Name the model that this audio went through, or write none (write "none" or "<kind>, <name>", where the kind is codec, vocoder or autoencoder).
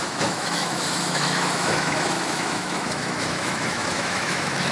autoencoder, DAC-VAE